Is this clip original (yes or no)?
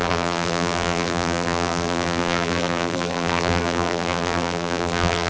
no